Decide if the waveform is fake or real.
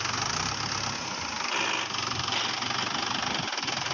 real